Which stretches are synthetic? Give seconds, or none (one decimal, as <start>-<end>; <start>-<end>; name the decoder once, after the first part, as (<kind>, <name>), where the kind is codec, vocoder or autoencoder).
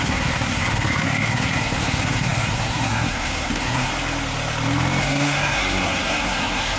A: 0.0-3.9 (codec, SNAC); 5.0-6.8